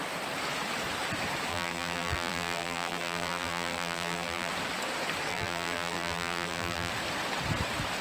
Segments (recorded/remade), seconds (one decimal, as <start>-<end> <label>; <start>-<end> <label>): 0.0-1.5 recorded; 1.5-4.5 remade; 4.5-5.3 recorded; 5.3-6.9 remade; 6.9-8.0 recorded